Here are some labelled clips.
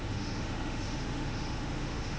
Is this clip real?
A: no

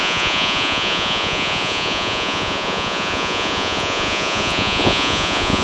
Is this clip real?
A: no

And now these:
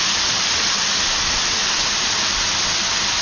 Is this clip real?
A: yes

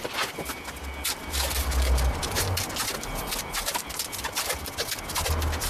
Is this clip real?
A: yes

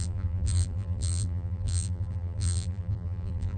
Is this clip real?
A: no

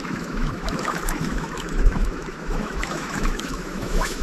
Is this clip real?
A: no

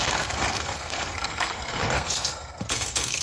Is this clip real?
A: no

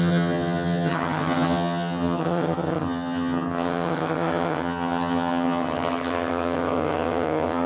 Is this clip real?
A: no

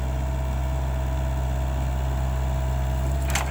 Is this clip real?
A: yes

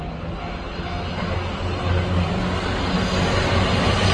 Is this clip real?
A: yes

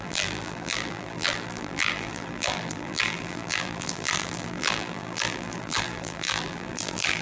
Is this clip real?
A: no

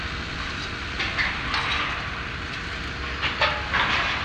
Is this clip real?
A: yes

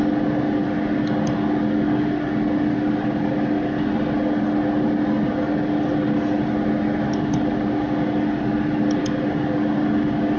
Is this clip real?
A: yes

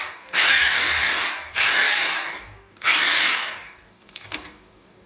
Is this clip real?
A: no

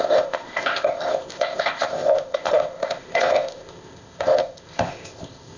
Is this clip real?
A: no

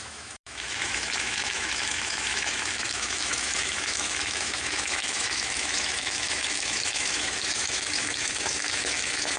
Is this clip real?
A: no